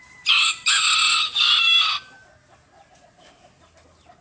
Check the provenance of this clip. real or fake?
real